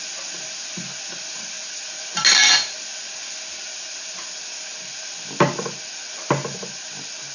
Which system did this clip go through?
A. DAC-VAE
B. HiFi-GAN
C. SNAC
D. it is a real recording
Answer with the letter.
D